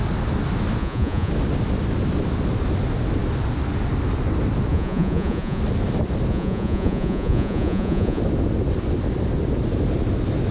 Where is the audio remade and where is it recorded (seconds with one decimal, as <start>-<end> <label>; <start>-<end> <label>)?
0.0-0.8 recorded; 0.8-1.3 remade; 1.3-4.7 recorded; 4.7-5.6 remade; 5.6-6.3 recorded; 6.3-8.2 remade; 8.2-10.5 recorded